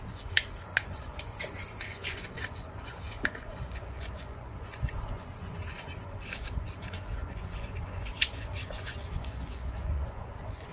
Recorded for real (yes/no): no